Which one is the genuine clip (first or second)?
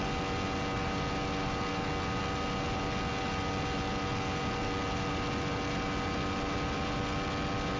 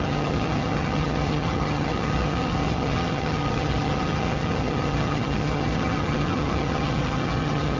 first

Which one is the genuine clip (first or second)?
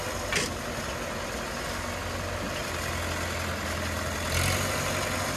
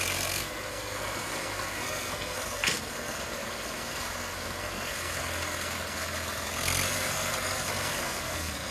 first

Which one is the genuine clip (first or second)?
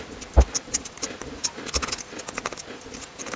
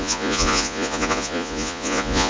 first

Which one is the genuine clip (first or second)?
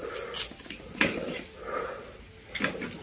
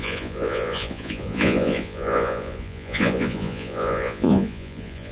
first